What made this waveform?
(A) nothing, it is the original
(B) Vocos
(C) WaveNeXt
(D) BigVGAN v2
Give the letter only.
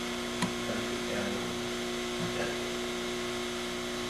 A